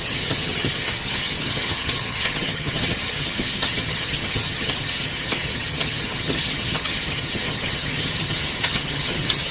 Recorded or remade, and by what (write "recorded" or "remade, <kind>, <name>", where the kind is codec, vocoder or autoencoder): remade, vocoder, HiFi-GAN